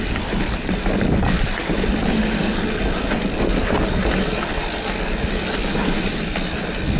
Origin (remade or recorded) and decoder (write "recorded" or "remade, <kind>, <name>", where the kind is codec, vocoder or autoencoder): recorded